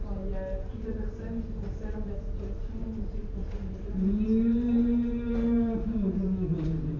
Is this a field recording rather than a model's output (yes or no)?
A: no